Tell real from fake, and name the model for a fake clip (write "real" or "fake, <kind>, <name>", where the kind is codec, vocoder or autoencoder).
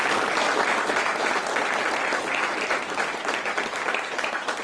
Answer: real